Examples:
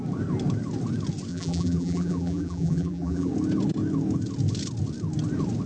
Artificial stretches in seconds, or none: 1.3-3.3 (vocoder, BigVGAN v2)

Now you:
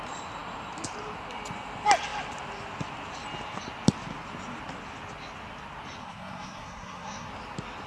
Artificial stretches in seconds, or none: 6.0-7.3 (codec, SNAC)

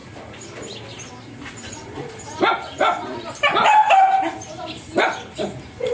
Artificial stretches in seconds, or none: none